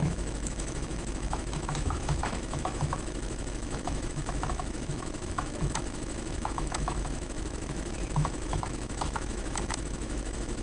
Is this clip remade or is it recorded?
remade